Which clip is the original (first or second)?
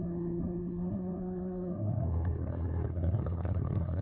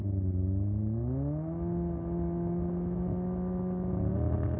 second